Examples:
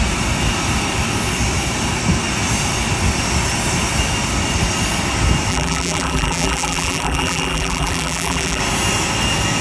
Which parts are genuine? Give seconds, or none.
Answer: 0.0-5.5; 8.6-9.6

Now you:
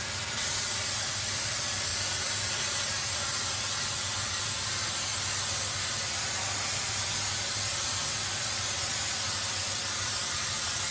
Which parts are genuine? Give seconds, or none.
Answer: 5.1-6.9

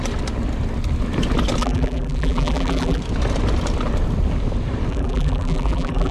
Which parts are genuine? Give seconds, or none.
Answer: 0.0-1.6; 3.0-4.9